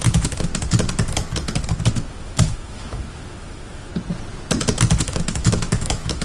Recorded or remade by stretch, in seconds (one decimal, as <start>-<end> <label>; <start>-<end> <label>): 0.0-0.5 remade; 0.5-2.1 recorded; 2.1-3.9 remade; 3.9-5.0 recorded; 5.0-6.2 remade